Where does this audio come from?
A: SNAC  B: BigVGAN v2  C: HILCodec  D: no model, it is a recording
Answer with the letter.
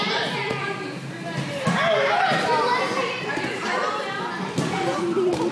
D